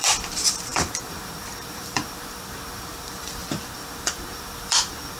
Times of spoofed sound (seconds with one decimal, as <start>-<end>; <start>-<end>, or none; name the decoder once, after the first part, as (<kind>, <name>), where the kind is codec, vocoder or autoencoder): 0.0-5.2 (vocoder, BigVGAN v2)